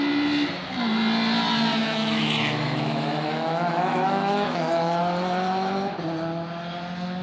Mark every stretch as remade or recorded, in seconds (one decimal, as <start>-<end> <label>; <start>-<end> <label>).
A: 0.0-1.8 recorded; 1.8-5.0 remade; 5.0-7.2 recorded